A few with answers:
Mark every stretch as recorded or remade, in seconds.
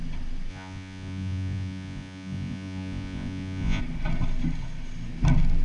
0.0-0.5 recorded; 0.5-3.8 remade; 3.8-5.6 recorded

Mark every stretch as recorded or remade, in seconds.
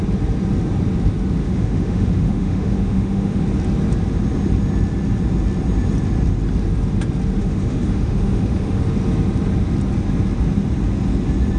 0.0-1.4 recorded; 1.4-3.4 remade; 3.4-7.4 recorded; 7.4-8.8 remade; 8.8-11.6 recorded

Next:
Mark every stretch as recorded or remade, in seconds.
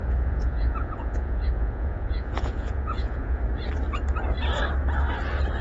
0.0-3.4 remade; 3.4-5.6 recorded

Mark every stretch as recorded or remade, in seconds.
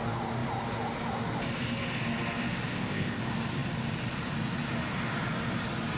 0.0-2.7 recorded; 2.7-3.2 remade; 3.2-6.0 recorded